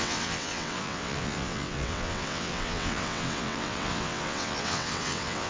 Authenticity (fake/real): fake